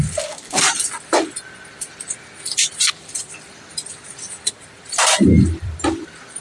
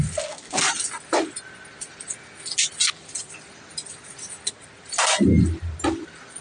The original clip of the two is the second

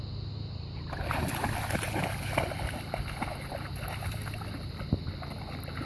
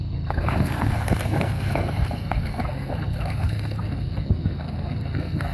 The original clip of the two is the first